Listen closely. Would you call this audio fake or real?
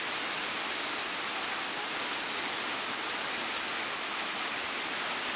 real